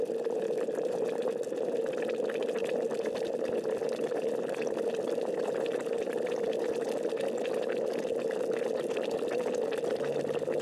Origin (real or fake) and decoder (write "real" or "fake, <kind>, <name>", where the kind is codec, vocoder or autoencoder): real